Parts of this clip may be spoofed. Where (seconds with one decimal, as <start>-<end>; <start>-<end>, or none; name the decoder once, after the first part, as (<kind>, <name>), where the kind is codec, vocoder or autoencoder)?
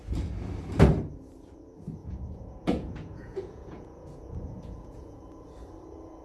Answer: 2.0-5.2 (vocoder, Vocos)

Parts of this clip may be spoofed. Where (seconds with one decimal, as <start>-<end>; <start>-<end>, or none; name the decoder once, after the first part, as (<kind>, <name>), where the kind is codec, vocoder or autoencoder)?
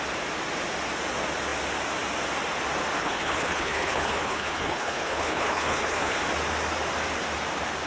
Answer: 3.0-6.2 (codec, HILCodec)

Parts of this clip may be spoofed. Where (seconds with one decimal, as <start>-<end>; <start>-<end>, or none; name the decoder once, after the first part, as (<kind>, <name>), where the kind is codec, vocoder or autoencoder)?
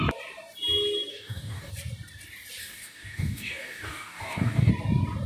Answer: 1.1-1.7 (codec, DAC); 2.6-4.7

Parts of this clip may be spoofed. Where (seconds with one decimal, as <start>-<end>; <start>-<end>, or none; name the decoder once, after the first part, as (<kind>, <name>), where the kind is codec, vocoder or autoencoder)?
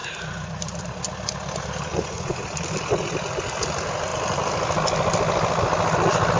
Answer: 1.9-2.4 (vocoder, Vocos)